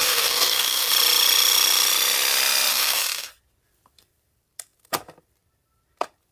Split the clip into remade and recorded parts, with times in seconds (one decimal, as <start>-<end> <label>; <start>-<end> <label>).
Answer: 0.0-0.9 remade; 0.9-2.7 recorded; 2.7-3.3 remade; 3.3-6.3 recorded